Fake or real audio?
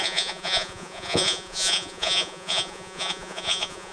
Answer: fake